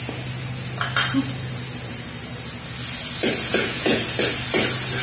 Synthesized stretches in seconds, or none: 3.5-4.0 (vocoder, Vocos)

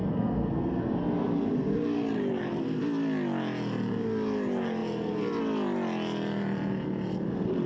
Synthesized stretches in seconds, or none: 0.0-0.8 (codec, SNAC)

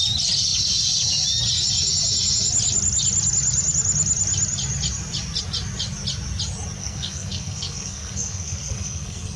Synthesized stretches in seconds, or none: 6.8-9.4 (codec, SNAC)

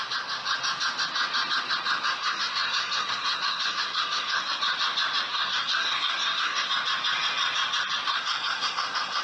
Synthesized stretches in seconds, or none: 2.2-4.6 (codec, SNAC); 5.3-6.7; 8.1-9.2

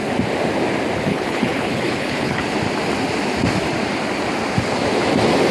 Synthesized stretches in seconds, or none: 1.1-2.4 (codec, HILCodec)